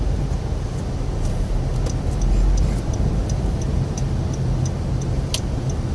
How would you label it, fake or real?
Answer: real